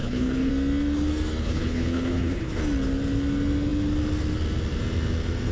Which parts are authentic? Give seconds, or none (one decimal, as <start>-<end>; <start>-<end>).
0.5-1.4; 2.6-5.5